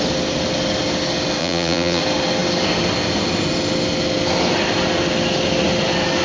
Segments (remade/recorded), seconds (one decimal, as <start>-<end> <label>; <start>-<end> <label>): 0.0-1.4 recorded; 1.4-2.0 remade; 2.0-6.2 recorded